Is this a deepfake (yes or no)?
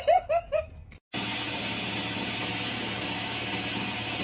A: no